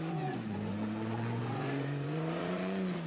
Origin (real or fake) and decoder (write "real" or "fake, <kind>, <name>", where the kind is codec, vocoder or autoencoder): fake, vocoder, Vocos